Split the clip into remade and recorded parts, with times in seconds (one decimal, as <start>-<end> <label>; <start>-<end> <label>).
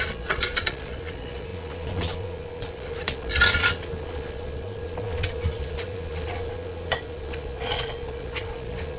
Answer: 0.0-9.0 remade